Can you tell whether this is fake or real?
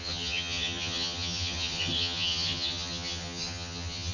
fake